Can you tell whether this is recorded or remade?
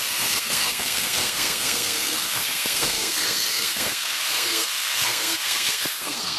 remade